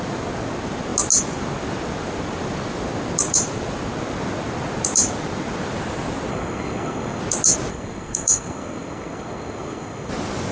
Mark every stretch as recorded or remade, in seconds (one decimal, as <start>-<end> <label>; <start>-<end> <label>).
0.0-6.3 recorded; 6.3-7.2 remade; 7.2-7.7 recorded; 7.7-10.1 remade; 10.1-10.5 recorded